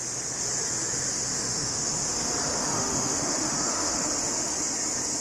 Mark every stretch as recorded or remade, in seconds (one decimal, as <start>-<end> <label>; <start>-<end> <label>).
0.0-1.3 recorded; 1.3-1.9 remade; 1.9-2.6 recorded; 2.6-4.1 remade; 4.1-5.2 recorded